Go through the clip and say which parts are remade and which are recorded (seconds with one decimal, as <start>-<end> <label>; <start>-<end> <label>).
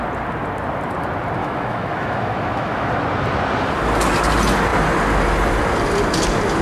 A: 0.0-1.4 recorded; 1.4-2.9 remade; 2.9-6.6 recorded